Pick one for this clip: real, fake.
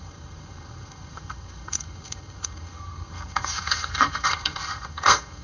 fake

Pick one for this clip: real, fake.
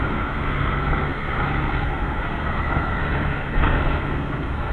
fake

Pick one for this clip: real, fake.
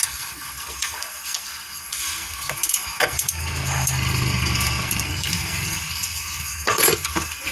fake